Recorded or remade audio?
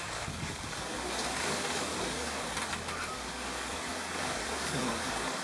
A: remade